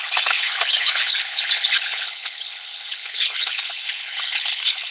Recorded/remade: remade